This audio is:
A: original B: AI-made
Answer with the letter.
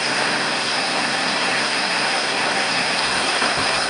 B